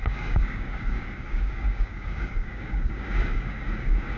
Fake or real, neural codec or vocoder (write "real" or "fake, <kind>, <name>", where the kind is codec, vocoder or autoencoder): fake, codec, DAC